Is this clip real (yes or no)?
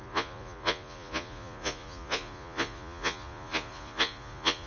no